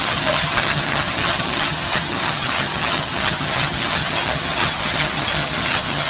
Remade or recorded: remade